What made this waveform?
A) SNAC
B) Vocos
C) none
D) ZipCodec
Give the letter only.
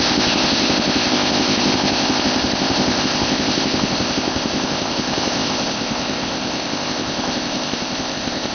D